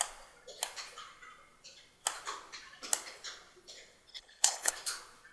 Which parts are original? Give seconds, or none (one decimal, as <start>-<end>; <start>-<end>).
0.0-4.1; 4.7-5.3